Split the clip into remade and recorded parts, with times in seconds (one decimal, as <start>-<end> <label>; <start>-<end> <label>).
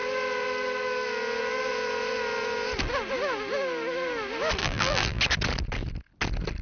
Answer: 0.0-4.6 recorded; 4.6-5.2 remade; 5.2-6.6 recorded